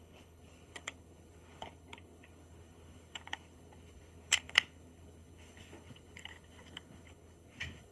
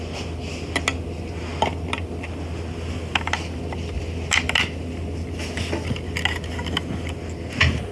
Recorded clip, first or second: second